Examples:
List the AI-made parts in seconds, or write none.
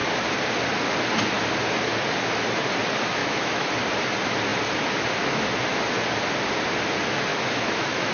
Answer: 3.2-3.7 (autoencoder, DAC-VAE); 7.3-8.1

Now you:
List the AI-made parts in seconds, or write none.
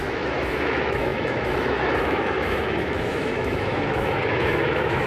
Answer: 0.0-5.1 (autoencoder, DAC-VAE)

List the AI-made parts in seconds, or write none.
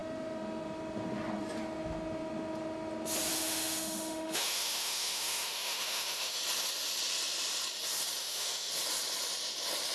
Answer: 3.3-6.4 (autoencoder, DAC-VAE); 8.2-8.7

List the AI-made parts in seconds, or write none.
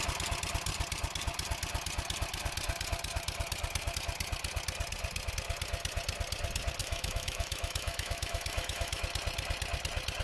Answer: 6.8-9.0 (autoencoder, DAC-VAE)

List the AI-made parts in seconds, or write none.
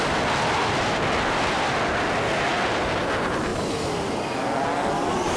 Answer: none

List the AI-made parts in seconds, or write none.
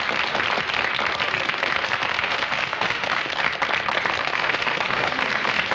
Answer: 2.1-3.4 (autoencoder, DAC-VAE); 4.2-5.1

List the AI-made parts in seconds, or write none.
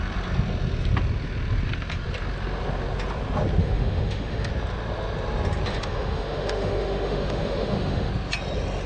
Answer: 3.6-4.5 (autoencoder, DAC-VAE); 5.7-8.1